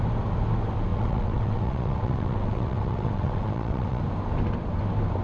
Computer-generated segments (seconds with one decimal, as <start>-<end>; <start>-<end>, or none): 0.9-4.0